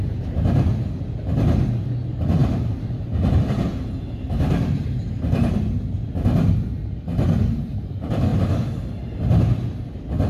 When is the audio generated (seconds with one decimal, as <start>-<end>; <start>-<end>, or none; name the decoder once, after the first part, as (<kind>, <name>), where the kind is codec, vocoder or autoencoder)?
2.4-5.0 (vocoder, BigVGAN v2); 8.3-9.4

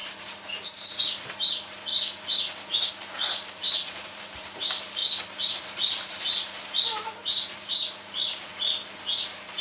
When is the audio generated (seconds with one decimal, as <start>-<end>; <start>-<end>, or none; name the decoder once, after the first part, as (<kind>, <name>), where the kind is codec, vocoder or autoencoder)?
0.0-1.9 (vocoder, BigVGAN v2); 2.9-5.0; 5.6-8.5; 9.2-9.6

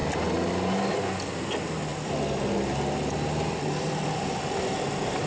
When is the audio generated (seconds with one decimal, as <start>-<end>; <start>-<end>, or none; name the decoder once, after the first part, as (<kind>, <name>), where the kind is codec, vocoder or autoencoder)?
0.8-1.9 (vocoder, BigVGAN v2)

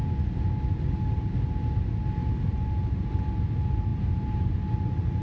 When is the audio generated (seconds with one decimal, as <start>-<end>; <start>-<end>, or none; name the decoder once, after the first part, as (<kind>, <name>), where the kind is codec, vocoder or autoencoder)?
2.2-3.2 (vocoder, BigVGAN v2)

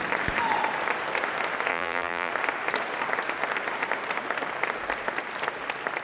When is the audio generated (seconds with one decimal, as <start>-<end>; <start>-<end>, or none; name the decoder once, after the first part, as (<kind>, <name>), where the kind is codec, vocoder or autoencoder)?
1.7-2.3 (vocoder, BigVGAN v2)